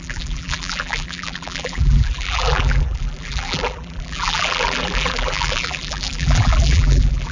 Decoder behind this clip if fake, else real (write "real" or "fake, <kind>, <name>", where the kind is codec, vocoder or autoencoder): fake, vocoder, BigVGAN v2